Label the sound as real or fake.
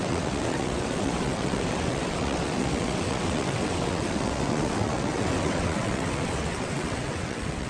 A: fake